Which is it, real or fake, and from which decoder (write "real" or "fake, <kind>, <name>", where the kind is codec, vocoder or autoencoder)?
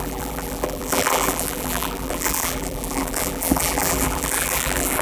fake, vocoder, BigVGAN v2